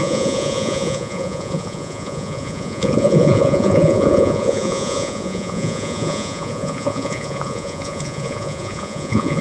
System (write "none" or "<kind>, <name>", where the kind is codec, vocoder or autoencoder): vocoder, Vocos